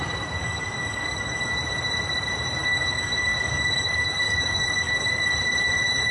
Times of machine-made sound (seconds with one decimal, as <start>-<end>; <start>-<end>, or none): 0.4-1.5; 2.6-5.3